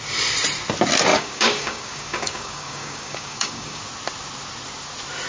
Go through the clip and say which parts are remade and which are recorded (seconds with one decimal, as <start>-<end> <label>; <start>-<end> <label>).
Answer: 0.0-1.1 recorded; 1.1-3.8 remade; 3.8-5.3 recorded